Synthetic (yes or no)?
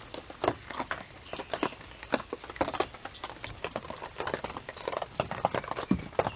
no